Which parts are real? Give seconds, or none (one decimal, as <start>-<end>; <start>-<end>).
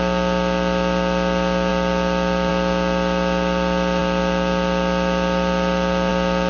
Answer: 0.0-6.5